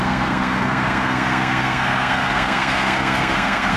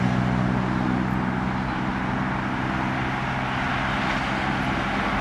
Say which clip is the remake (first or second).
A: first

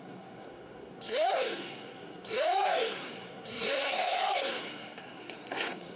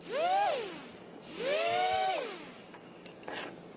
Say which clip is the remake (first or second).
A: first